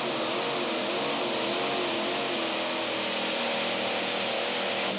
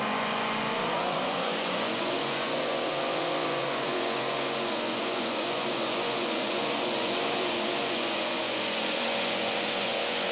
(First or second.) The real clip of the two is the first